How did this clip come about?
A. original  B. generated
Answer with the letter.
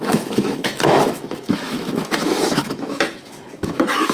B